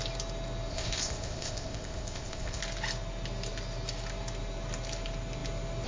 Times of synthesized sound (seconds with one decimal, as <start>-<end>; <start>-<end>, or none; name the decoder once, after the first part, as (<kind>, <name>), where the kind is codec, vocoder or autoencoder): 0.7-2.6 (codec, ZipCodec)